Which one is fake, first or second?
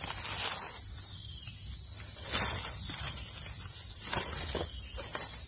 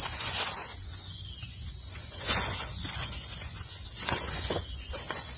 second